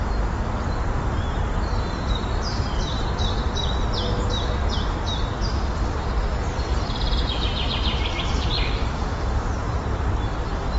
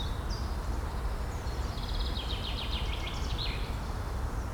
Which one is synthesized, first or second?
first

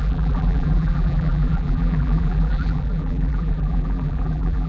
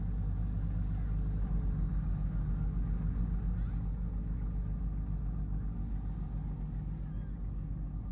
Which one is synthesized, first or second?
first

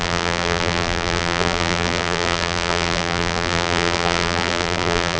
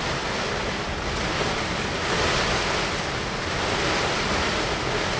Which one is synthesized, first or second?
first